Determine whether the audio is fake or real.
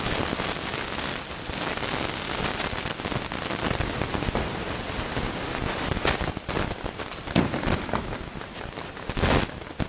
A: real